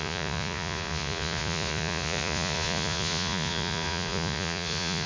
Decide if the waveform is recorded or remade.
remade